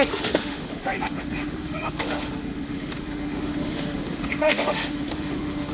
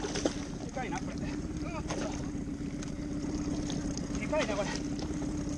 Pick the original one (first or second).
second